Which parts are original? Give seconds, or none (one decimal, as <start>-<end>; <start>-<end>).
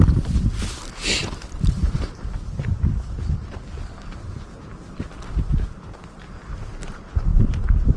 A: 0.0-1.2; 2.3-7.3